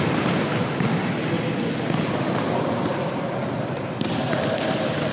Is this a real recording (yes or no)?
yes